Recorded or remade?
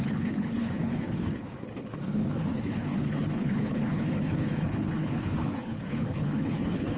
remade